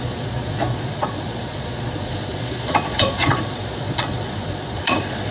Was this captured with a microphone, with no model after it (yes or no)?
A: no